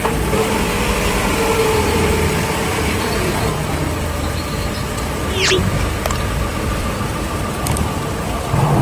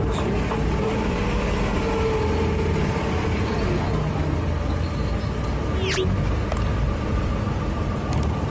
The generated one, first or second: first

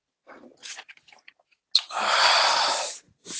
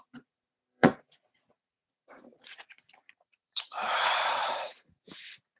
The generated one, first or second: second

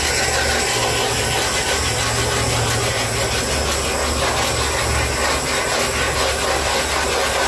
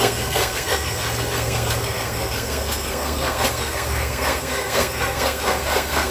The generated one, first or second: second